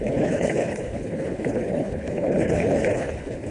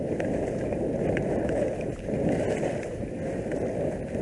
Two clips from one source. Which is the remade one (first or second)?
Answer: first